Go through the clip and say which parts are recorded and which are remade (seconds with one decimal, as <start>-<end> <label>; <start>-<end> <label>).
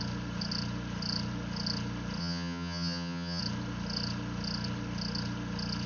0.0-2.2 recorded; 2.2-3.4 remade; 3.4-5.9 recorded